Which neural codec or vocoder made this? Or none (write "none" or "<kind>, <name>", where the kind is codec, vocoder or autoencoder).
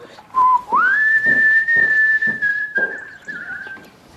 vocoder, BigVGAN v2